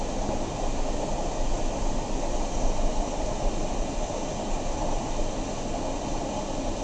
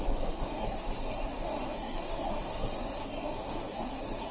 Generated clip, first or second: second